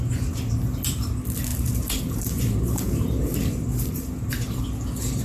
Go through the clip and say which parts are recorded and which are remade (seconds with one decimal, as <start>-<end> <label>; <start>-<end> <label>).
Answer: 0.0-1.5 recorded; 1.5-4.6 remade; 4.6-5.2 recorded